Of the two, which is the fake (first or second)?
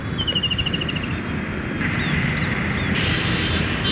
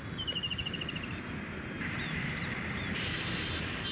second